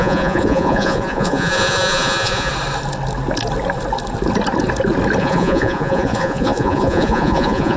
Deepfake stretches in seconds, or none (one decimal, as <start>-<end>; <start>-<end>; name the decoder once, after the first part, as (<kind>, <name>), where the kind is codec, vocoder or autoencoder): 0.0-2.5 (vocoder, Vocos); 5.2-7.8